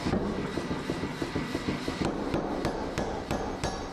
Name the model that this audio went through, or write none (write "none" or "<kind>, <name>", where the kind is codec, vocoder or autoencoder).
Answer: none